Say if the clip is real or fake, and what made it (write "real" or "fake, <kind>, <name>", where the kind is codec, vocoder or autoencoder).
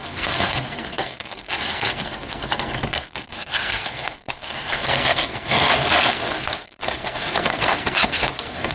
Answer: fake, codec, SNAC